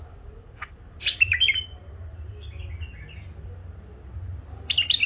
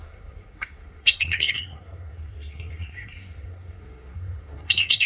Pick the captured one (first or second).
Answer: first